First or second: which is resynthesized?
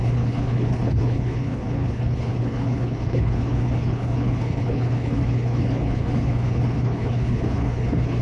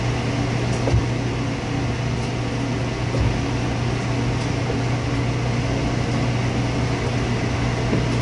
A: first